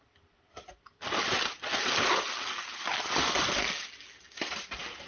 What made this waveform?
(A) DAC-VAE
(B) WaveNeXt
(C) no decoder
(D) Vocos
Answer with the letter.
C